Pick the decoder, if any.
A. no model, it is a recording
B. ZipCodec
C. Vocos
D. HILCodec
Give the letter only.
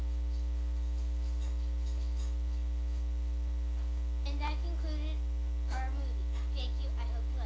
A